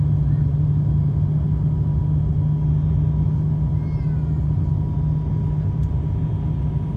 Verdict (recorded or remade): recorded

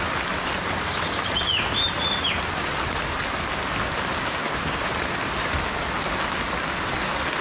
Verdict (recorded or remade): recorded